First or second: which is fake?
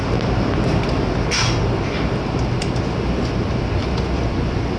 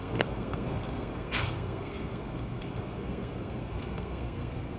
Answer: second